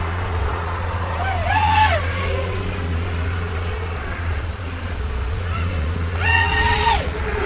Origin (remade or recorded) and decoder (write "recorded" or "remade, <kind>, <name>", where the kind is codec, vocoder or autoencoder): remade, vocoder, Vocos